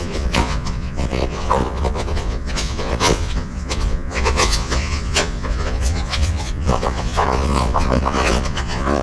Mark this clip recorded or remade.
remade